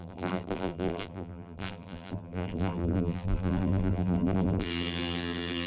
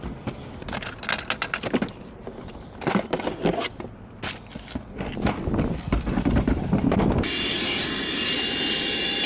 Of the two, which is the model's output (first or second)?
first